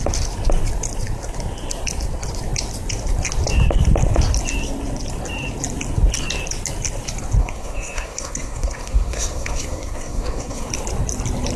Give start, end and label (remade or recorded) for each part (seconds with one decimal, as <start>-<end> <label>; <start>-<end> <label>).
0.0-7.4 recorded; 7.4-10.7 remade; 10.7-11.6 recorded